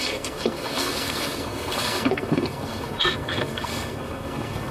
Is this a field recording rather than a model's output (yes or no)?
no